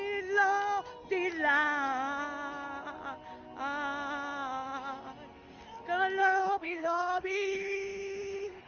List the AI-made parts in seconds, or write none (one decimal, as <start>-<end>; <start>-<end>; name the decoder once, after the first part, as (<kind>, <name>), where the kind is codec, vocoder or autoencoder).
6.2-8.7 (codec, HILCodec)